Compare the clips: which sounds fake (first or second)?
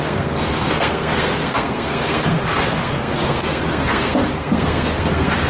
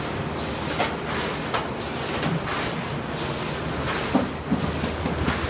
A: first